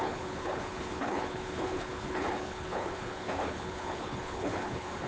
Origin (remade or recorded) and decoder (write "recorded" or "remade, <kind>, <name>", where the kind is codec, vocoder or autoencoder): remade, codec, HILCodec